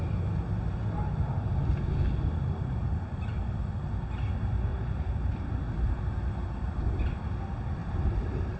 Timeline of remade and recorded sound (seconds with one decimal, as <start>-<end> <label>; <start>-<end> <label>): 0.0-4.7 recorded; 4.7-5.5 remade; 5.5-7.8 recorded; 7.8-8.6 remade